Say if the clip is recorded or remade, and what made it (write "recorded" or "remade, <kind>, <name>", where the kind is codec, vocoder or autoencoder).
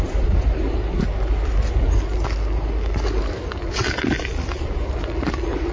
recorded